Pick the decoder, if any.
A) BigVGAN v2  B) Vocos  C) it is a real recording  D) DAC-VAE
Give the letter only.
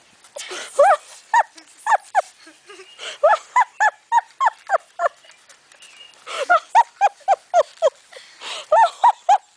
C